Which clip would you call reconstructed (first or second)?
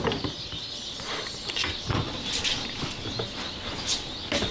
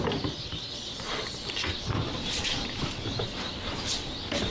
second